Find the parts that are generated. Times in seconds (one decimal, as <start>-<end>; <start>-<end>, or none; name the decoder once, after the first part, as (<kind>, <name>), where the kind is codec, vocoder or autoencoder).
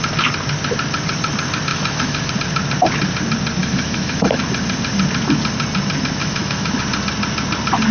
1.7-2.3 (autoencoder, DAC-VAE); 3.6-4.4; 6.2-6.8